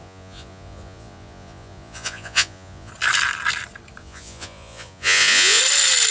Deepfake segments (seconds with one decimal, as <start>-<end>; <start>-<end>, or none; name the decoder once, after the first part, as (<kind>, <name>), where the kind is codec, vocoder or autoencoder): 0.0-2.9 (vocoder, Vocos); 4.0-5.6